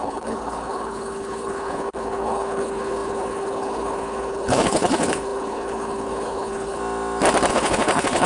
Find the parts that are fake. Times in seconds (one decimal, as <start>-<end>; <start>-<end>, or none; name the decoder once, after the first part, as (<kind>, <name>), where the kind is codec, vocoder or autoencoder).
0.0-6.8 (codec, HILCodec); 7.5-8.3